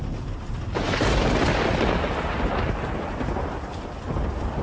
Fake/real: real